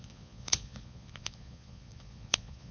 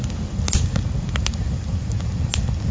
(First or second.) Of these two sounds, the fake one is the first